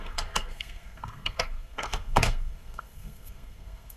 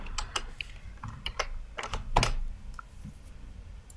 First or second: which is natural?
second